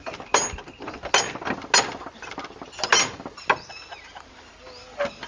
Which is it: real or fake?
real